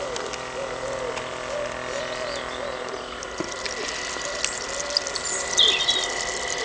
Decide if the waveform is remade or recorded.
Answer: recorded